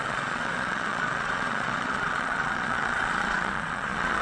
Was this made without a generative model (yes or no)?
no